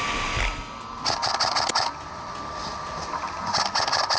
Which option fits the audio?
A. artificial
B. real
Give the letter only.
B